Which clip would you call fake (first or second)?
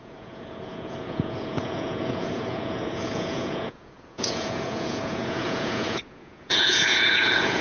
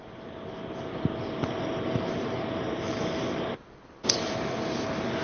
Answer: first